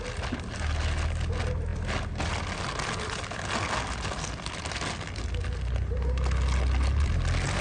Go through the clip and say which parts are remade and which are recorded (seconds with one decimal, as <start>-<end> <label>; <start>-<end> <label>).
0.0-7.6 recorded